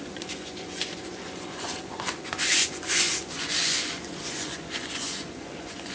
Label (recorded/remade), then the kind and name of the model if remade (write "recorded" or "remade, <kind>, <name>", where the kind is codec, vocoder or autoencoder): remade, vocoder, Vocos